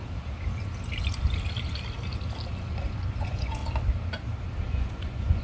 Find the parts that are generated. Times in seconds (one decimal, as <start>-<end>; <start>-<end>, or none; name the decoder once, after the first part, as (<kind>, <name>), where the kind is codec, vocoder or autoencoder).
3.1-3.6 (vocoder, Vocos); 4.7-5.4